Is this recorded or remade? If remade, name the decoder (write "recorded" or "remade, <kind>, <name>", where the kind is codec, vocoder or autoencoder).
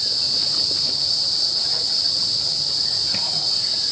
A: recorded